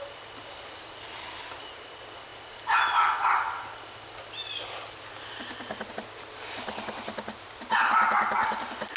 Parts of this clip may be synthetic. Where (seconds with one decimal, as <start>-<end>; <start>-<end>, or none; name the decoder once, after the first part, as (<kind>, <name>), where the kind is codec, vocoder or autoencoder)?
none